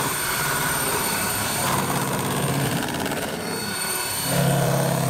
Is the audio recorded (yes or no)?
no